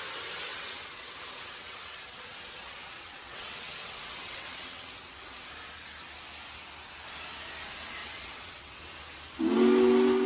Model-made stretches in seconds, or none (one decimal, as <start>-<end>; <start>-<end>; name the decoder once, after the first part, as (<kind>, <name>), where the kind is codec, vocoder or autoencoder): 0.5-5.5 (vocoder, WaveNeXt); 8.0-8.8